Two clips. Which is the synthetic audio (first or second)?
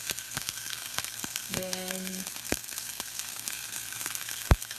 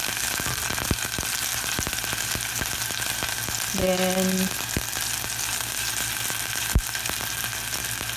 first